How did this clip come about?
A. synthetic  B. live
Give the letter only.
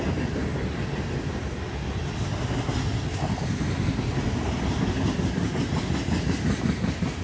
B